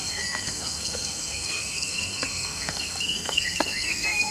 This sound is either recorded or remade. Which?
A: remade